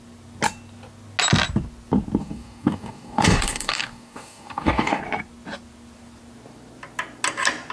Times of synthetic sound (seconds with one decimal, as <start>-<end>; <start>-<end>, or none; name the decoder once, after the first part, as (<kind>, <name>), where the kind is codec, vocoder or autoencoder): 2.2-5.0 (codec, DAC)